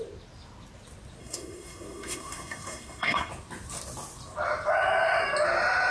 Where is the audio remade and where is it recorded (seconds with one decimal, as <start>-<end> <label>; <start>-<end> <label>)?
0.0-1.2 recorded; 1.2-3.3 remade; 3.3-5.9 recorded